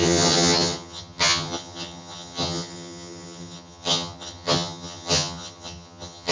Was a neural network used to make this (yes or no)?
yes